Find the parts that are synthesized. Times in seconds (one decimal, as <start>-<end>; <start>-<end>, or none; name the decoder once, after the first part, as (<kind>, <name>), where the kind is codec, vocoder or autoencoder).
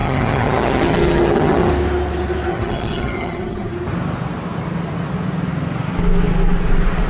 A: 0.0-1.7 (vocoder, HiFi-GAN); 2.5-3.7